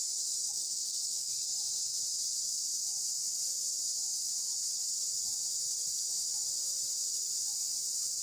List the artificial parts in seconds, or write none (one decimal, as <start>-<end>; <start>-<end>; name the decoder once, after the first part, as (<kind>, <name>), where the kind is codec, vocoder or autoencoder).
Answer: 0.4-1.3 (codec, SNAC)